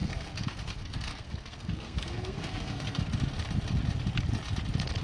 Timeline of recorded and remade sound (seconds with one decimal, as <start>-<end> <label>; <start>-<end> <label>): 0.0-3.0 remade; 3.0-5.0 recorded